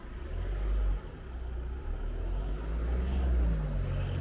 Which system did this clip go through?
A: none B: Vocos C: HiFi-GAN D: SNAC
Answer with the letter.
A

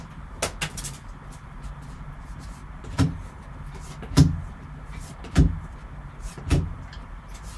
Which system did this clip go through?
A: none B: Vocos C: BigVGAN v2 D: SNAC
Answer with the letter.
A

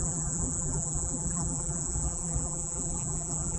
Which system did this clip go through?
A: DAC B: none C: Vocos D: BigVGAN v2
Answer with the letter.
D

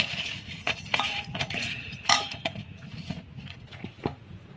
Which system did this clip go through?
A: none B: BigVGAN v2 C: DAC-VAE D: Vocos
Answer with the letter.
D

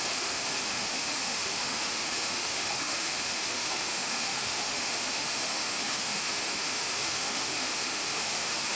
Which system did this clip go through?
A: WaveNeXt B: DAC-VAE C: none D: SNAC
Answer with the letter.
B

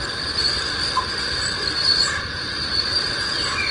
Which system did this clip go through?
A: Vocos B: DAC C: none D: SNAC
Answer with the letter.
C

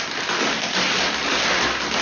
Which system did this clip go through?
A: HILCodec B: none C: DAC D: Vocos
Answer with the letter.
B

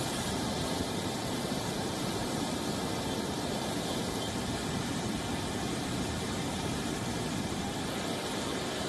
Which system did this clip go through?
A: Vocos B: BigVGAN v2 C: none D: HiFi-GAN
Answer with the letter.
B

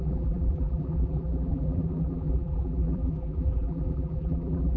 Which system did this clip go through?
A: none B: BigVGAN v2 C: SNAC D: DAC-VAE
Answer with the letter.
B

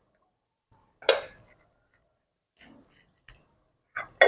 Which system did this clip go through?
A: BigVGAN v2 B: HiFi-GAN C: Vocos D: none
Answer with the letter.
D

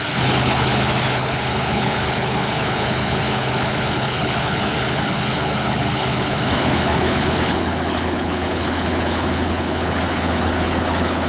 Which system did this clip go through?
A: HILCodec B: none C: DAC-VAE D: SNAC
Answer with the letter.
A